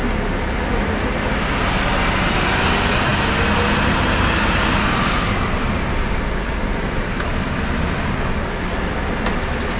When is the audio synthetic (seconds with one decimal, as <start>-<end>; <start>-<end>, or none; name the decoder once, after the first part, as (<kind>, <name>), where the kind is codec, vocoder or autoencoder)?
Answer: none